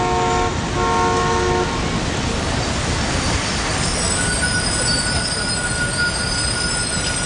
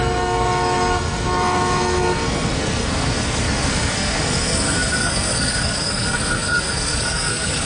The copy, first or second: second